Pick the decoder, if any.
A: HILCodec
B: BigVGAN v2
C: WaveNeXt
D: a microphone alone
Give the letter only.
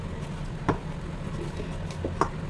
D